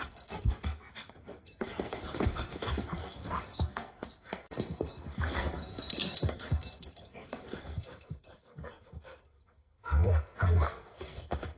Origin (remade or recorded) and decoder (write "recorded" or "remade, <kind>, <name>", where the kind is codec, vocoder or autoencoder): remade, codec, SNAC